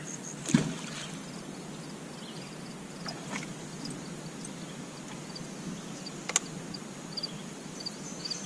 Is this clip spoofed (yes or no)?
no